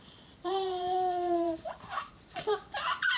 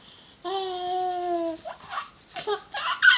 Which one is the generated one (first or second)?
first